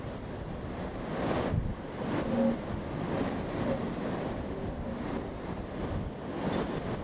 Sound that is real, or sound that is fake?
real